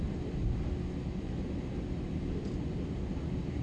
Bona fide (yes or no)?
yes